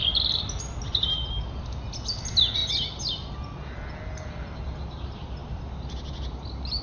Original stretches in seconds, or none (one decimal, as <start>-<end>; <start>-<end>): 0.6-6.8

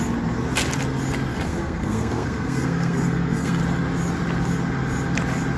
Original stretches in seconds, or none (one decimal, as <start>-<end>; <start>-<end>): 0.0-1.3; 3.6-5.6

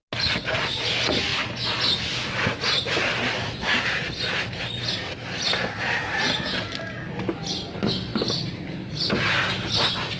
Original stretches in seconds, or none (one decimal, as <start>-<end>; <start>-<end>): 0.0-8.1; 9.3-10.2